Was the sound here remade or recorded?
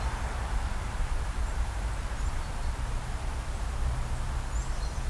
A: remade